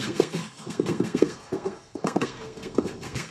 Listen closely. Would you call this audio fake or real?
fake